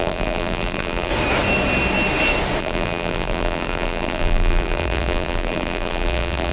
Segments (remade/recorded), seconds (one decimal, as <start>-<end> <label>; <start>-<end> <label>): 0.0-1.1 remade; 1.1-2.6 recorded; 2.6-6.5 remade